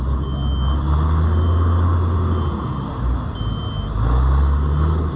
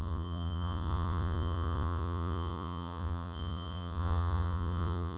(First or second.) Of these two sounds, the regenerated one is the second